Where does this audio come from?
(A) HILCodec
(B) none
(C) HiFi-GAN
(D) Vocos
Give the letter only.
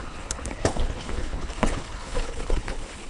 A